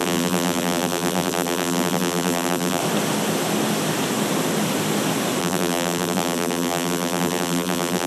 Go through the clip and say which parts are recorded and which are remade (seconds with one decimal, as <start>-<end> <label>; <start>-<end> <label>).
0.0-2.8 remade; 2.8-5.4 recorded; 5.4-8.1 remade